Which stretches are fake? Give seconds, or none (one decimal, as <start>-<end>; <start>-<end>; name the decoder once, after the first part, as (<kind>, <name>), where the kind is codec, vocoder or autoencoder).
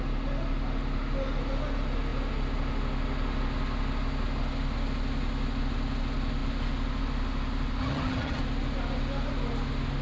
7.8-8.4 (vocoder, HiFi-GAN)